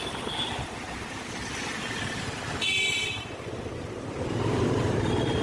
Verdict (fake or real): real